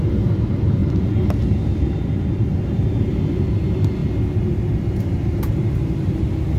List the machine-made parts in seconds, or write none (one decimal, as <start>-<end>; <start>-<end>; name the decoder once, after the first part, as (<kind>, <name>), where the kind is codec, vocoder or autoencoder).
none